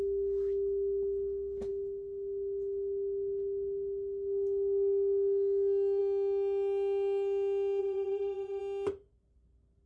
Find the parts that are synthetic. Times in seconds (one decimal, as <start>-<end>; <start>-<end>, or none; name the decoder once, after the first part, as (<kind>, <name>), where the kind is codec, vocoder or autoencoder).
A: 7.8-8.6 (vocoder, WaveNeXt)